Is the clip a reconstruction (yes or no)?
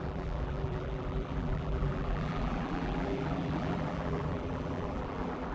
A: yes